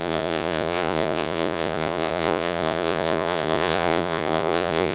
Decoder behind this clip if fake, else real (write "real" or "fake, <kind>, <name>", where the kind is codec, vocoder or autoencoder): fake, vocoder, Vocos